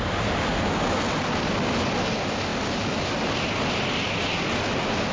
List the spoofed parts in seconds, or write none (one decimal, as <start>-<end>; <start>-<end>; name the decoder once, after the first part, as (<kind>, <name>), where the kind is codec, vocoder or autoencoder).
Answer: none